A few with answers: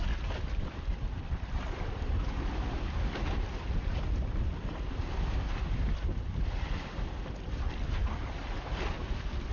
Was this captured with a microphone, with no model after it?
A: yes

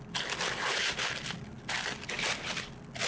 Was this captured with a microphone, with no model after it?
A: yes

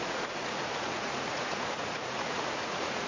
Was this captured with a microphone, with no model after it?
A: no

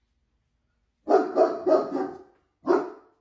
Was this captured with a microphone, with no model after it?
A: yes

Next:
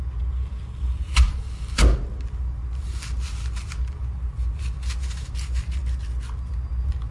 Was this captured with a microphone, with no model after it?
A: yes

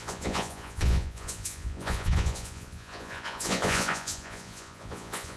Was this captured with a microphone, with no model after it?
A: no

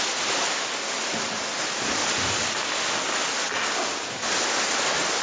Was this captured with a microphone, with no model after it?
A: yes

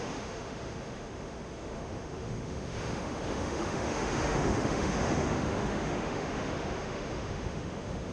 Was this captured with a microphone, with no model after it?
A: no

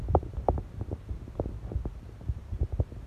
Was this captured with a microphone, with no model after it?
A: no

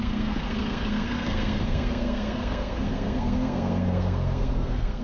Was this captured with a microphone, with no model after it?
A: no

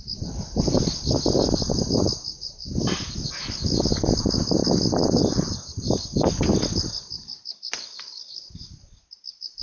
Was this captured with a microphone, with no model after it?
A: yes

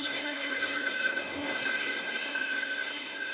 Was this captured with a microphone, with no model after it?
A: no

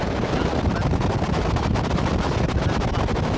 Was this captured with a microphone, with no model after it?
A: yes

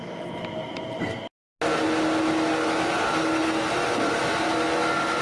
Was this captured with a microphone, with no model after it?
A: yes